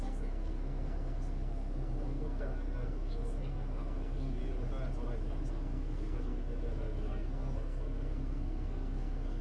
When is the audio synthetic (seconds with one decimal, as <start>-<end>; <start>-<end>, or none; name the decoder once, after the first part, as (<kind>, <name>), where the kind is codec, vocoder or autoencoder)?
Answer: 0.0-4.4 (codec, SNAC); 5.5-9.4